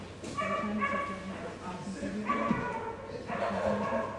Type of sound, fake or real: real